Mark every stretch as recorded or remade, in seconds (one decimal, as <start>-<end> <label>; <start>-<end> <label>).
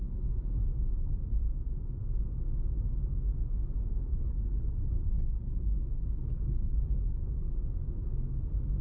0.0-4.1 recorded; 4.1-7.5 remade; 7.5-8.8 recorded